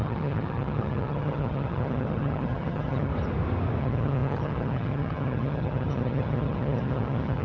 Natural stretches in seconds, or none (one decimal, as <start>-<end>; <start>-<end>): 3.1-3.8

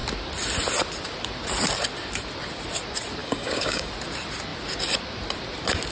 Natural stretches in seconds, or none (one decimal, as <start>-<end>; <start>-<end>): 0.0-3.2; 3.9-5.9

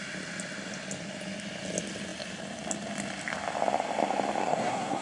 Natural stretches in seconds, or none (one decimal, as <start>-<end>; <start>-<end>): 0.0-4.4